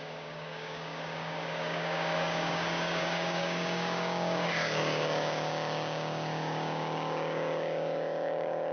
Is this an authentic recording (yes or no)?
no